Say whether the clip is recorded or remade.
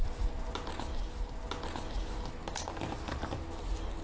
recorded